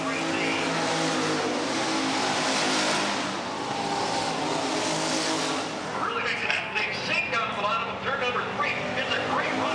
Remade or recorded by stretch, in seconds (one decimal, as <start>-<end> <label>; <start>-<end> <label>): 0.0-6.4 recorded; 6.4-6.9 remade; 6.9-9.7 recorded